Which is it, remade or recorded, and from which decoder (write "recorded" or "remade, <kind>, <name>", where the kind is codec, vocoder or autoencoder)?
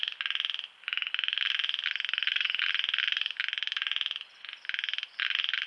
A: recorded